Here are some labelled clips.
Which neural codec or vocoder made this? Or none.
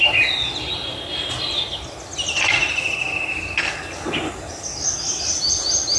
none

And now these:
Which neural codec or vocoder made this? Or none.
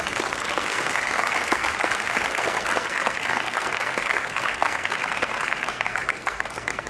codec, SNAC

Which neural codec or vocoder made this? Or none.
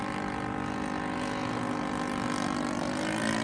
none